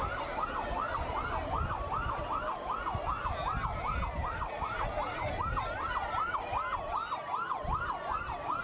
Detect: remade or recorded recorded